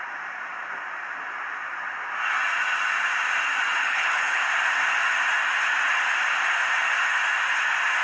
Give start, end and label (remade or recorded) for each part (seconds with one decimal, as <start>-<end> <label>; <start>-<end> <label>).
0.0-3.8 recorded; 3.8-4.4 remade; 4.4-8.0 recorded